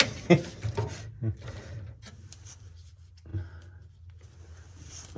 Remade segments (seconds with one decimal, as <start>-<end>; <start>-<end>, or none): 0.0-3.3; 4.7-5.2